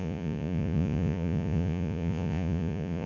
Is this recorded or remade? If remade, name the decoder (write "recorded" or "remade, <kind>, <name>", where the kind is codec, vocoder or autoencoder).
remade, vocoder, Vocos